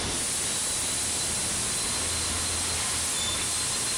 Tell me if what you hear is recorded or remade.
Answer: recorded